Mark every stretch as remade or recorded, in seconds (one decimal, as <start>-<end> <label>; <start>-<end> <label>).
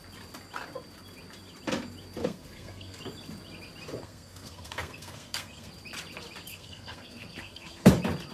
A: 0.0-2.2 recorded; 2.2-3.0 remade; 3.0-4.0 recorded; 4.0-5.7 remade; 5.7-6.5 recorded; 6.5-7.9 remade; 7.9-8.3 recorded